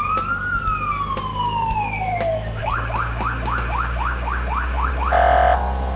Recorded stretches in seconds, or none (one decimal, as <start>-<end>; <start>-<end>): 0.0-1.3; 4.9-6.0